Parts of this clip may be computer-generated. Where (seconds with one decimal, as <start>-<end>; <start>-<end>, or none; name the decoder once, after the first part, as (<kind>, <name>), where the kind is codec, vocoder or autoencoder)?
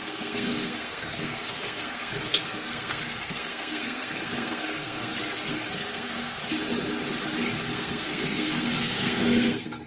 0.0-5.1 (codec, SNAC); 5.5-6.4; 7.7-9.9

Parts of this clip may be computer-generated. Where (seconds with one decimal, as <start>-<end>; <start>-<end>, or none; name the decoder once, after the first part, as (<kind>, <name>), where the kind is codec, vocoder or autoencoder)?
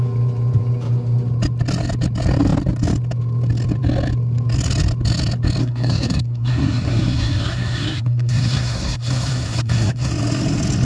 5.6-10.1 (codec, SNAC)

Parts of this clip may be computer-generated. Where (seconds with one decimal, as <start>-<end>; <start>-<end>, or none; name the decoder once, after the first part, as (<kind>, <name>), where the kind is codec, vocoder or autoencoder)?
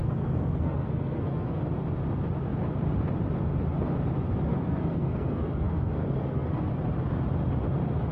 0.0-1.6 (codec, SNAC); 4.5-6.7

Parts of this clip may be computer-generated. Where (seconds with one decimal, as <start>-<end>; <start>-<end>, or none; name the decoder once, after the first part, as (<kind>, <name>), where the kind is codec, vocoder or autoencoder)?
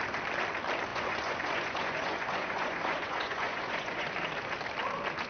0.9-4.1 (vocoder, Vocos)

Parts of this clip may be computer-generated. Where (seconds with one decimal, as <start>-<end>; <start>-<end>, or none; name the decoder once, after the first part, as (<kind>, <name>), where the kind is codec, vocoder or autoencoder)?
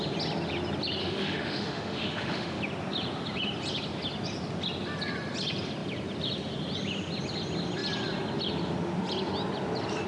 1.0-2.6 (autoencoder, DAC-VAE)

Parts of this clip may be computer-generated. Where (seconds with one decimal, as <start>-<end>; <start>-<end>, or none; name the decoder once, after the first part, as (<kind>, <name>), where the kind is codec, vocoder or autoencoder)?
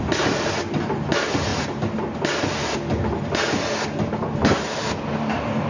none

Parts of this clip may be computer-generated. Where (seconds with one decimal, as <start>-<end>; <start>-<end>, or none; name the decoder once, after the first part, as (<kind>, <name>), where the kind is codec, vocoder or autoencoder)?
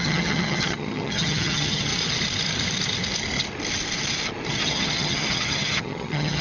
0.0-1.9 (vocoder, HiFi-GAN); 4.5-6.4